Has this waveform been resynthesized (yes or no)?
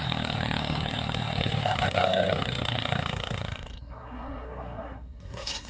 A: yes